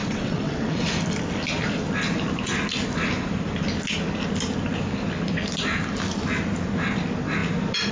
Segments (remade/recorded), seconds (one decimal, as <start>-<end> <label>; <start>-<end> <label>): 0.0-0.9 remade; 0.9-7.9 recorded